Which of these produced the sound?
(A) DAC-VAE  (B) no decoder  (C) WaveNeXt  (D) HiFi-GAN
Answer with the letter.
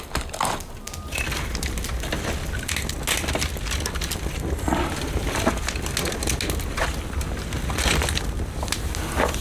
B